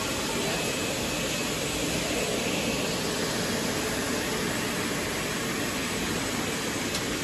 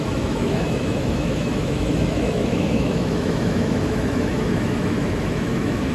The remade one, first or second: second